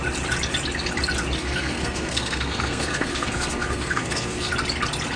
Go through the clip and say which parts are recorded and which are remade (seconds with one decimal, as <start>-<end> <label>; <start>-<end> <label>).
0.0-1.4 recorded; 1.4-4.5 remade; 4.5-5.2 recorded